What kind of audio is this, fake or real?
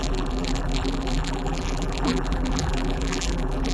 fake